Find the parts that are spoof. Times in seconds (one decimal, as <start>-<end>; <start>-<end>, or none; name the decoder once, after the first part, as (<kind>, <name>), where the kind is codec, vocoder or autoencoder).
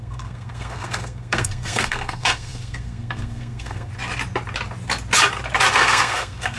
0.0-3.9 (codec, SNAC); 5.7-6.6